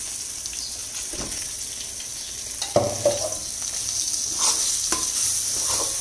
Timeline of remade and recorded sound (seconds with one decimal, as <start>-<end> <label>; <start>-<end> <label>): 0.0-0.8 recorded; 0.8-1.6 remade; 1.6-6.0 recorded